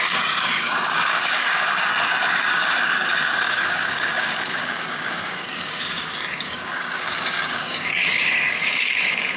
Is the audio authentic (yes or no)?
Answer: no